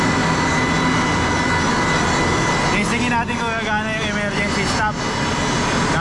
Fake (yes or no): no